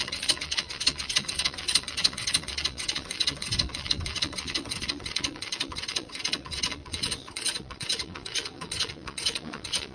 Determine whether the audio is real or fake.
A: fake